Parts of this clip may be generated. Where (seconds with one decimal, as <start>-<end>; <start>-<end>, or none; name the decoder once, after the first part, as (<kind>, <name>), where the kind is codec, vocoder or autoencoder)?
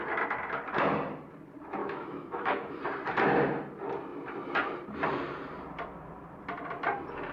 1.8-2.8 (autoencoder, DAC-VAE)